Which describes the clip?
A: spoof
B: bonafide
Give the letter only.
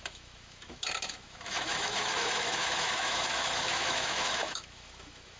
A